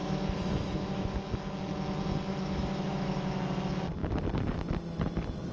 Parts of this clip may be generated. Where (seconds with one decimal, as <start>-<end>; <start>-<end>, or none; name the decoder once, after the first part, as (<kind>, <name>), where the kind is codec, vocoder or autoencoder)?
0.0-1.3 (autoencoder, DAC-VAE); 2.3-3.4